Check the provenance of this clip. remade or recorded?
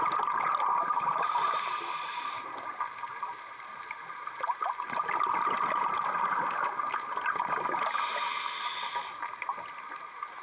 recorded